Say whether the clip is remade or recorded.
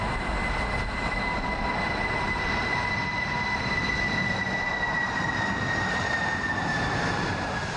recorded